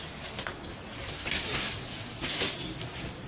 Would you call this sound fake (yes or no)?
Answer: no